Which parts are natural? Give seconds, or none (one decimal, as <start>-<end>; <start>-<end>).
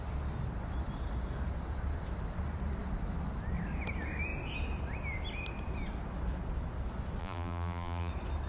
0.0-7.2; 8.1-8.5